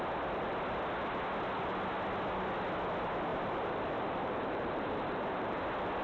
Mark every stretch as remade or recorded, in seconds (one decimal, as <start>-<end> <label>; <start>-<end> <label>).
0.0-3.3 recorded; 3.3-5.6 remade; 5.6-6.0 recorded